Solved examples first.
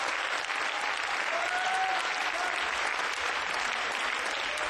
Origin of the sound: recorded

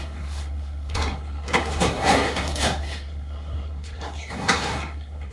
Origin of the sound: remade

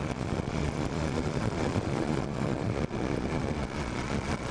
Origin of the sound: remade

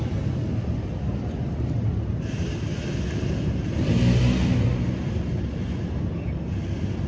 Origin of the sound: recorded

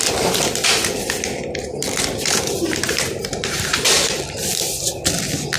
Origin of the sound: recorded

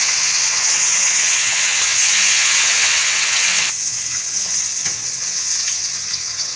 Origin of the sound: remade